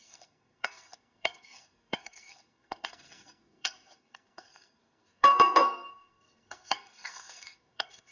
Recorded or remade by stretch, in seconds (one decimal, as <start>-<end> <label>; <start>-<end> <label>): 0.0-8.1 remade